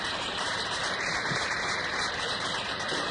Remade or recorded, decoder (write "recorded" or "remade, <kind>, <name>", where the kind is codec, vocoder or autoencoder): remade, vocoder, BigVGAN v2